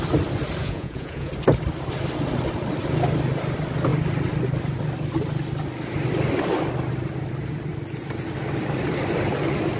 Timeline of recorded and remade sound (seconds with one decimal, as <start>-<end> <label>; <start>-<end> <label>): 0.0-0.6 recorded; 0.6-1.3 remade; 1.3-9.8 recorded